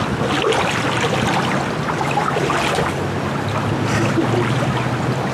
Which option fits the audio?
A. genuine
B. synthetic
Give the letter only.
A